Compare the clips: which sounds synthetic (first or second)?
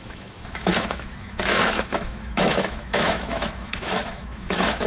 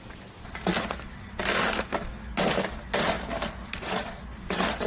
first